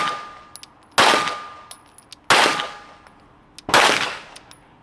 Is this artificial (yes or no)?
no